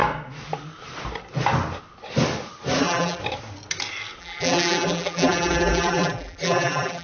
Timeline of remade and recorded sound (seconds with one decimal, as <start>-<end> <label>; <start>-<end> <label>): 0.0-2.8 recorded; 2.8-3.2 remade; 3.2-4.2 recorded; 4.2-7.0 remade